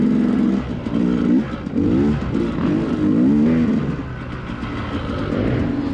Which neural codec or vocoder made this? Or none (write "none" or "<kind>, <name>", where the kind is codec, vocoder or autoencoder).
none